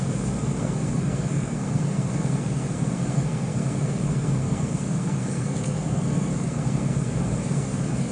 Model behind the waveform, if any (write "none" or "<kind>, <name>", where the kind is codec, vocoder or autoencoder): codec, SNAC